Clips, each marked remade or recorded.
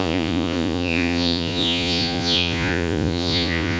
remade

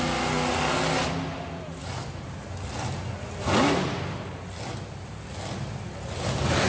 recorded